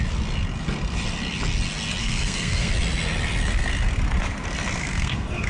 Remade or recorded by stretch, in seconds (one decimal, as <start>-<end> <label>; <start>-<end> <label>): 0.0-2.0 recorded; 2.0-2.7 remade; 2.7-4.8 recorded; 4.8-5.5 remade